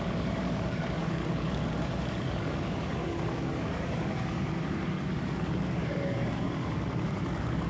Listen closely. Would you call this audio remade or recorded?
remade